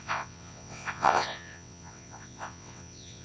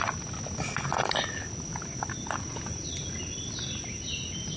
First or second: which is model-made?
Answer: first